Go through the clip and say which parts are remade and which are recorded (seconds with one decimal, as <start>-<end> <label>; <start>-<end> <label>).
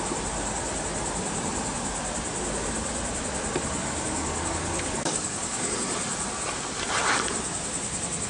0.0-3.8 recorded; 3.8-5.7 remade; 5.7-8.3 recorded